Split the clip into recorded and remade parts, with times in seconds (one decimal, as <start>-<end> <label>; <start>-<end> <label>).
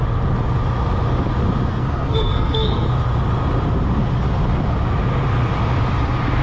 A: 0.0-1.7 recorded; 1.7-2.9 remade; 2.9-6.4 recorded